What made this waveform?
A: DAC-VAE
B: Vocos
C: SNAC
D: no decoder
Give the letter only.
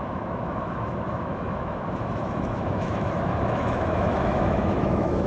A